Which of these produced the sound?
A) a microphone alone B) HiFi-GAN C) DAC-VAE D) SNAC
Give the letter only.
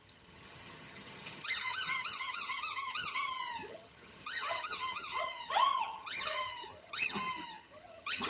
B